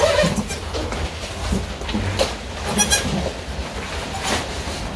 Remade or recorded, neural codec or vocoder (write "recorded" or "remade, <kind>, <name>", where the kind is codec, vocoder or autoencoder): recorded